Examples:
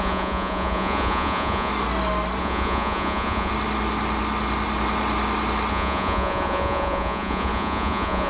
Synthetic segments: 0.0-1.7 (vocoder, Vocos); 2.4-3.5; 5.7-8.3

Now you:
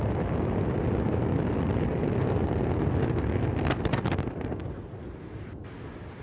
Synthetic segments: none

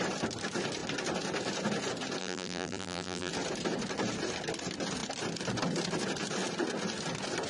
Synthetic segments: 2.2-3.3 (vocoder, BigVGAN v2)

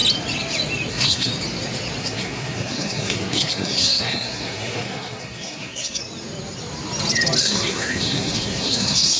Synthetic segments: 0.9-1.3 (codec, SNAC); 2.0-6.0; 7.4-9.2

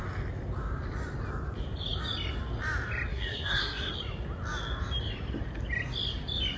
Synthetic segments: 3.1-3.9 (codec, SNAC)

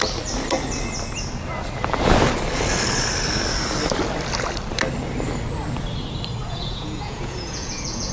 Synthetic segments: 6.4-8.1 (vocoder, Vocos)

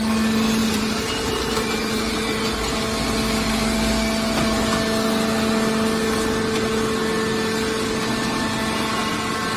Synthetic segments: 0.6-2.4 (vocoder, BigVGAN v2)

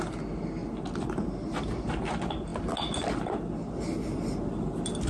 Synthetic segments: 0.6-1.6 (vocoder, BigVGAN v2)